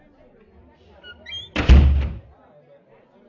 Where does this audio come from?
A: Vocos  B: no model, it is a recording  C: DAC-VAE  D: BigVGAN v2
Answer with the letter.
B